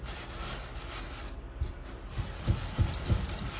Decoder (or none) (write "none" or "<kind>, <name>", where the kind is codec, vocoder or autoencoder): none